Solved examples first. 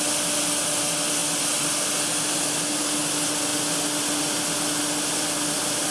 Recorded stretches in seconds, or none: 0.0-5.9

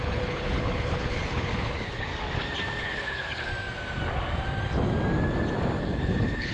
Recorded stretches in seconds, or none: 2.1-2.8; 3.5-5.8

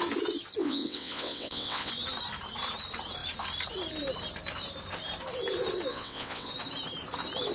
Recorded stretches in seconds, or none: 0.0-0.6; 1.9-5.9; 6.5-7.5

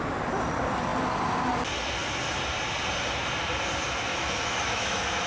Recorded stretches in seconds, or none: 0.0-4.1

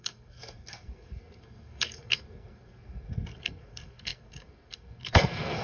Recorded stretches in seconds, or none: none

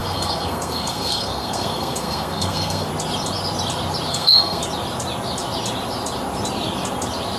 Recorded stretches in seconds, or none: 2.9-4.1; 4.6-7.4

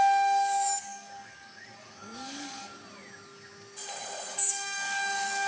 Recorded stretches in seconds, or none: 2.7-4.3